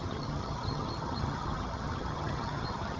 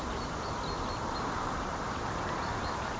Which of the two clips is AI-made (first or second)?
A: first